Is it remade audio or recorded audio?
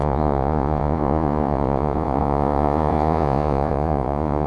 remade